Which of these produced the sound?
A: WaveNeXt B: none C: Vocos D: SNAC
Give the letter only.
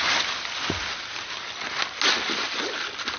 B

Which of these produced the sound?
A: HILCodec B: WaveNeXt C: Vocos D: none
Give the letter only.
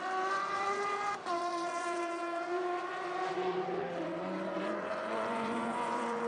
C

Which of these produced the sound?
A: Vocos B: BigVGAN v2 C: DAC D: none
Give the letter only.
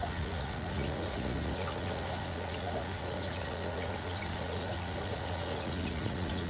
A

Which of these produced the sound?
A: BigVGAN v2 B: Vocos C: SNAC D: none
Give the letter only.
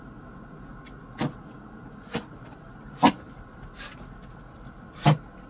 D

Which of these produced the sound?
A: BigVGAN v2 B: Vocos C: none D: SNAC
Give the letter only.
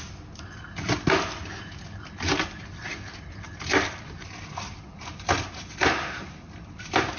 C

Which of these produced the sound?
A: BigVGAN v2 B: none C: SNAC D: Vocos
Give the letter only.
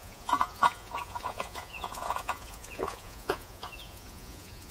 D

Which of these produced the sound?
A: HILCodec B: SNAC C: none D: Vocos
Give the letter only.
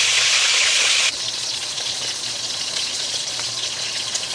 D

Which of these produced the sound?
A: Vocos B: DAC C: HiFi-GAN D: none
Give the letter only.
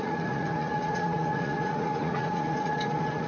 A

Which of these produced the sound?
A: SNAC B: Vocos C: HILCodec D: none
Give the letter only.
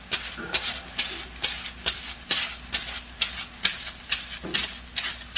D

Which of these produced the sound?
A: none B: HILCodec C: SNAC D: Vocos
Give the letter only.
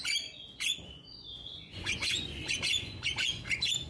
D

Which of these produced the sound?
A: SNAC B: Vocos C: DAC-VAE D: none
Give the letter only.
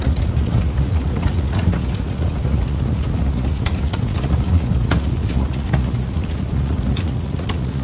B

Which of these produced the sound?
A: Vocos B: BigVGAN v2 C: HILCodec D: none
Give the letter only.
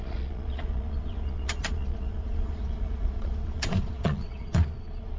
A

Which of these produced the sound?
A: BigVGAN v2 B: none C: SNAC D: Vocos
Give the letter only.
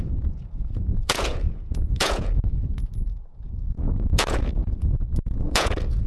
D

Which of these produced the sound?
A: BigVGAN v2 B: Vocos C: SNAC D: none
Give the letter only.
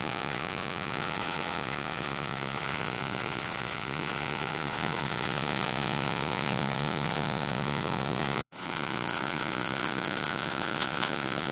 B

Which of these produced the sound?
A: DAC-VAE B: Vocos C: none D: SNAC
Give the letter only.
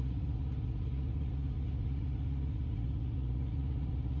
B